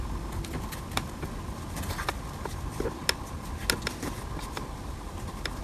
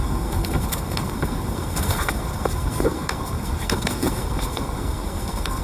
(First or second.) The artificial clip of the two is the second